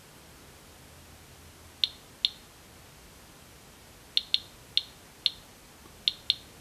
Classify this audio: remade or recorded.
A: recorded